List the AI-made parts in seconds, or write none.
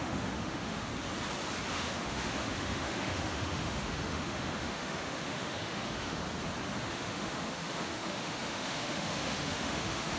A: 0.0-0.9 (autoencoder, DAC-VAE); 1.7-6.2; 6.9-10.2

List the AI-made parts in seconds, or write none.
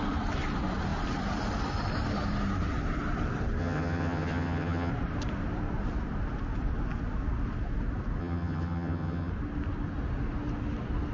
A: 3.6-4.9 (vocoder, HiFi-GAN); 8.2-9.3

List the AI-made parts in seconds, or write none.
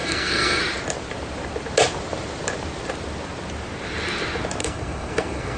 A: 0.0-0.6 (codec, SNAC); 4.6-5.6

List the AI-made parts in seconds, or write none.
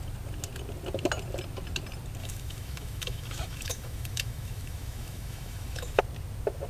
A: 2.2-6.0 (autoencoder, DAC-VAE)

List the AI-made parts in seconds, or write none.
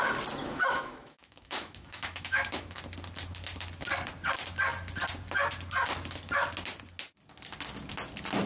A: 0.4-2.8 (autoencoder, DAC-VAE)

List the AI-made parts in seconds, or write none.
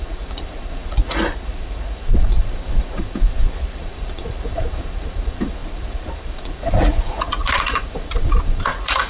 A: 0.0-9.1 (vocoder, Vocos)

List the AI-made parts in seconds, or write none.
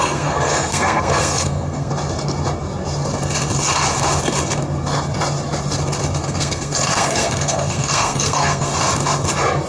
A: 0.0-1.9 (codec, SNAC); 6.2-8.7